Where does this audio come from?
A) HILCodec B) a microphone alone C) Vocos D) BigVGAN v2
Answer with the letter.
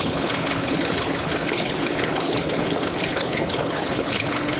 A